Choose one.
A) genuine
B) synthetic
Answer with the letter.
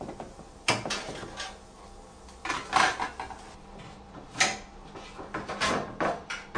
A